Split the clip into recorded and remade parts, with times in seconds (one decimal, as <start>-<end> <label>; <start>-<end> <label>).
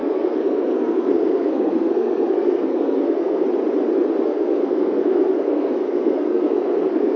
0.0-3.4 remade; 3.4-4.3 recorded; 4.3-7.2 remade